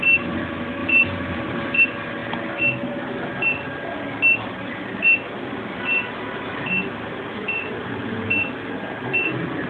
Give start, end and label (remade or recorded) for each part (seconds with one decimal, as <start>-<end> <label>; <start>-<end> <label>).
0.0-0.8 recorded; 0.8-1.8 remade; 1.8-9.7 recorded